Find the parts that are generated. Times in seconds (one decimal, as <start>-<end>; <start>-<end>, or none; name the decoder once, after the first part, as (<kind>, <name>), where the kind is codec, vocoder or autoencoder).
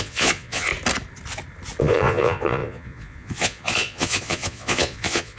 0.0-0.7 (vocoder, Vocos); 1.8-5.4